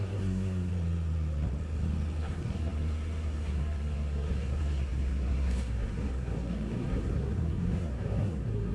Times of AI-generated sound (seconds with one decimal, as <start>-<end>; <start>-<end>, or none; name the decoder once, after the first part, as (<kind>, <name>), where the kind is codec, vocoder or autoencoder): 0.0-0.7 (codec, SNAC); 2.2-8.7

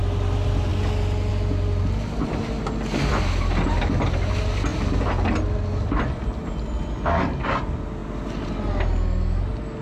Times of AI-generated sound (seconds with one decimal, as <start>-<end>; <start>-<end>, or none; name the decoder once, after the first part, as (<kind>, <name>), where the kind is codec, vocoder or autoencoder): none

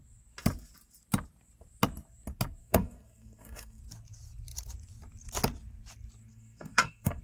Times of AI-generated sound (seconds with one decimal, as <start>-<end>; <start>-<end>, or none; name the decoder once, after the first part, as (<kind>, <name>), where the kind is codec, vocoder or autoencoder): 2.6-3.8 (codec, SNAC); 6.3-7.2

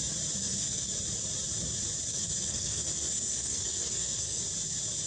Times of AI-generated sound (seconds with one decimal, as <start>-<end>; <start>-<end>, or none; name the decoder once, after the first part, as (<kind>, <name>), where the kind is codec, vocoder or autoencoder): 0.4-0.9 (codec, SNAC); 2.1-4.4